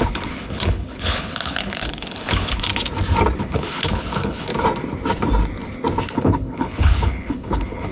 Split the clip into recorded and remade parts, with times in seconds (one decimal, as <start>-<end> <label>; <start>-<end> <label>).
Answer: 0.0-2.7 remade; 2.7-3.4 recorded; 3.4-4.5 remade; 4.5-6.0 recorded; 6.0-7.9 remade